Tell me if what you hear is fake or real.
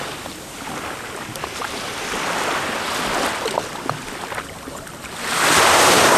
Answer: real